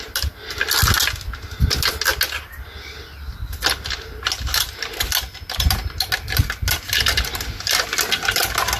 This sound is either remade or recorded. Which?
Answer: recorded